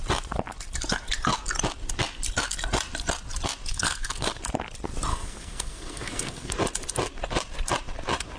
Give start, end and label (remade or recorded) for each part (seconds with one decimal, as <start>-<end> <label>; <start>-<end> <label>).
0.0-3.7 recorded; 3.7-4.4 remade; 4.4-5.1 recorded; 5.1-6.5 remade; 6.5-8.4 recorded